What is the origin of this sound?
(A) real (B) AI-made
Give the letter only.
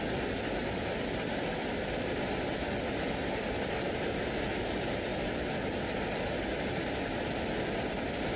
A